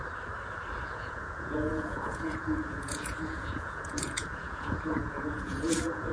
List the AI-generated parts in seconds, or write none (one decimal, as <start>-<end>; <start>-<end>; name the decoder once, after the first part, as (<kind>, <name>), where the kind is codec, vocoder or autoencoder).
0.8-6.1 (vocoder, Vocos)